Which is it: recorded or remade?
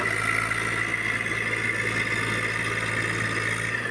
recorded